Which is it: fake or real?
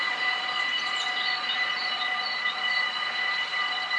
fake